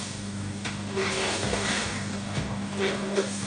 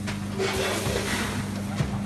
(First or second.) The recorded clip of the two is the second